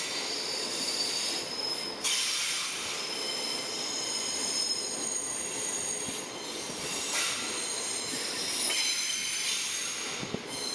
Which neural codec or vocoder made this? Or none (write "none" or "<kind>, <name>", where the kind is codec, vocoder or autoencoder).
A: none